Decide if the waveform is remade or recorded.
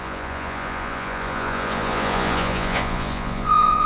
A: remade